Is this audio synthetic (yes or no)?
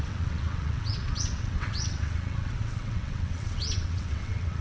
yes